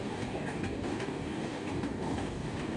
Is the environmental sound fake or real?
fake